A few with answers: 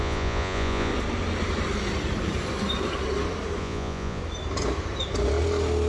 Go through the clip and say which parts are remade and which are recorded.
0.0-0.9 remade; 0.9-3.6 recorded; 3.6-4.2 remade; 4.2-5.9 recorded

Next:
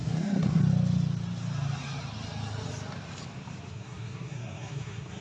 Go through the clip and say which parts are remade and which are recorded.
0.0-0.6 remade; 0.6-3.7 recorded; 3.7-5.2 remade

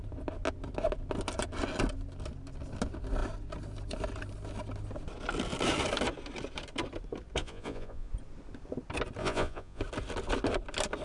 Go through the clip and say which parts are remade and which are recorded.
0.0-7.4 recorded; 7.4-8.1 remade; 8.1-9.2 recorded; 9.2-9.8 remade; 9.8-11.0 recorded

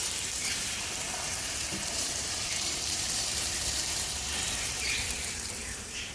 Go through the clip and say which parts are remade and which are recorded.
0.0-6.1 remade